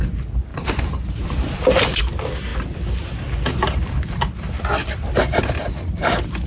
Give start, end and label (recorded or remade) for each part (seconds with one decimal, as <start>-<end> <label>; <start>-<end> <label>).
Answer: 0.0-0.5 recorded; 0.5-2.0 remade; 2.0-6.5 recorded